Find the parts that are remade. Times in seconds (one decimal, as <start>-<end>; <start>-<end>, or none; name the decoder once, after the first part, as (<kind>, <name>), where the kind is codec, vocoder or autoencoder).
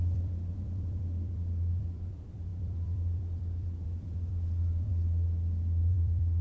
0.0-4.9 (vocoder, BigVGAN v2); 5.9-6.4